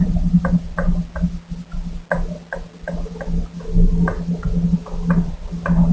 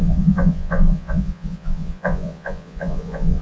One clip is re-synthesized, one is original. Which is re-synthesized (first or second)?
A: second